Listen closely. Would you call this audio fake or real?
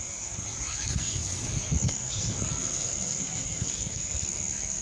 fake